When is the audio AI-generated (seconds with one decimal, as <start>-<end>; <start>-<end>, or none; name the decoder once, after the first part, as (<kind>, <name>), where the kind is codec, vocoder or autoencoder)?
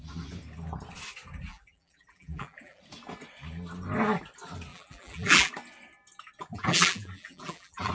1.5-2.8 (vocoder, BigVGAN v2); 4.7-5.5; 6.5-7.9